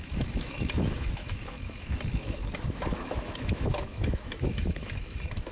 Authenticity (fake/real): fake